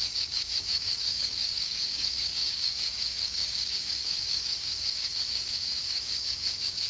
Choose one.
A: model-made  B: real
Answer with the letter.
A